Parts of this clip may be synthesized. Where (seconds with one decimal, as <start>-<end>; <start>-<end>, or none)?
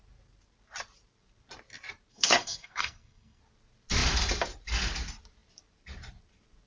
2.1-3.4